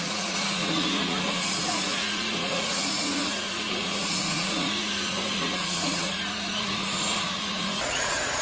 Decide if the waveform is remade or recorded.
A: remade